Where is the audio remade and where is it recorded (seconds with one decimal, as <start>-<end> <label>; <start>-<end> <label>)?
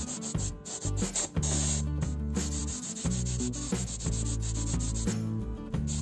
0.0-6.0 recorded